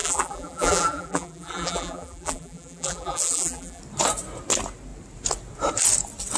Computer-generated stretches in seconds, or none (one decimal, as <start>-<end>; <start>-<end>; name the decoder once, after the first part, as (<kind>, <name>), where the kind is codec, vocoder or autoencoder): 0.0-3.8 (vocoder, BigVGAN v2)